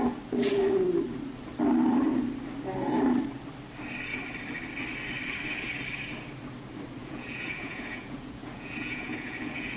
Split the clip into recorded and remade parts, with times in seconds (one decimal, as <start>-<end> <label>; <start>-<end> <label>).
0.0-7.0 recorded; 7.0-9.8 remade